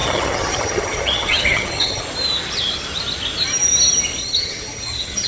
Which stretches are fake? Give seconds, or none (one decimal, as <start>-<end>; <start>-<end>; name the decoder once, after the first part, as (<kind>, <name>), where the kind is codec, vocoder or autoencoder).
0.0-2.0 (vocoder, HiFi-GAN); 4.2-5.3

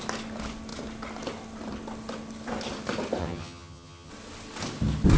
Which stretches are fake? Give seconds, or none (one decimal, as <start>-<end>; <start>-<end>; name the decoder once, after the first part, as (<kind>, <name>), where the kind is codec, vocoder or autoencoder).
3.2-4.1 (vocoder, HiFi-GAN)